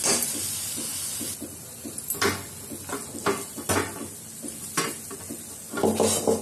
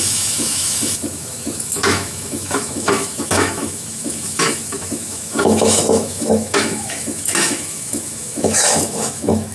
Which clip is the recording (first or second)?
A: first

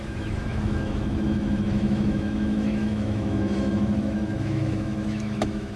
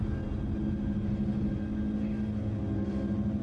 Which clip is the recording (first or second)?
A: second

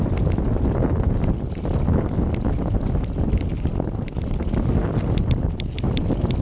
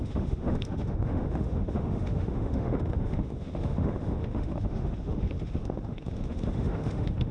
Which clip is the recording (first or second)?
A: first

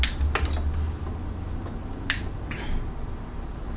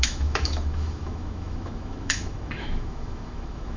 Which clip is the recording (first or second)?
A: first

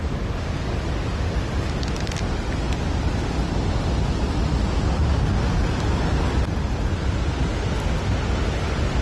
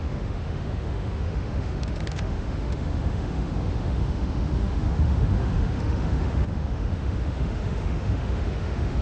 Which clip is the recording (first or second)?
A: first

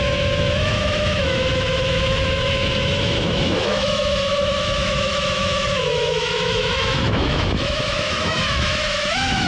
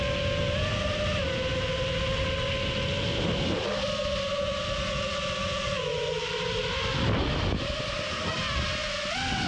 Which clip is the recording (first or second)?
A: second